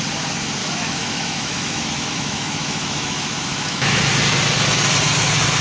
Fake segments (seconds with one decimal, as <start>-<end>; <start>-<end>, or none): 0.6-4.0